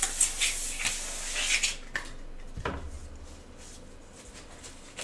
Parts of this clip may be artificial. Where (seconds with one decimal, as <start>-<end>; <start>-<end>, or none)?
none